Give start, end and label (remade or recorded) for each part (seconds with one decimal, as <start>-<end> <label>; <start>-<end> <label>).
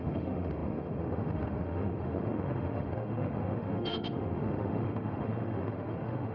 0.0-6.3 remade